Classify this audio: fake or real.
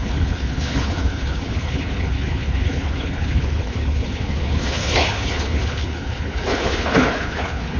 fake